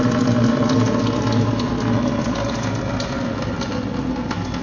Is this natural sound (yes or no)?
yes